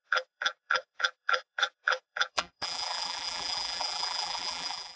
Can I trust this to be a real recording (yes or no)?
no